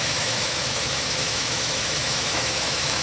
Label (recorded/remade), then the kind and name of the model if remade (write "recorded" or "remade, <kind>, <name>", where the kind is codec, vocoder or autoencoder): remade, autoencoder, DAC-VAE